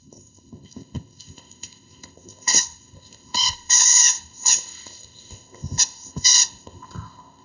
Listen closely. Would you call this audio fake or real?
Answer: fake